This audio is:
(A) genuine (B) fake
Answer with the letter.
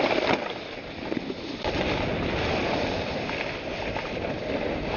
A